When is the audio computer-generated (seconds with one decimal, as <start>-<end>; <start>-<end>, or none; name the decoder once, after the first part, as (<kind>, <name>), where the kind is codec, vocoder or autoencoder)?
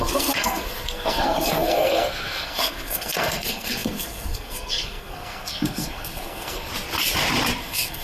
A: 0.0-6.7 (codec, SNAC); 7.6-8.0